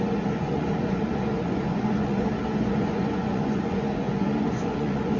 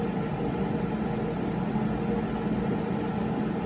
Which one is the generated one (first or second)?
first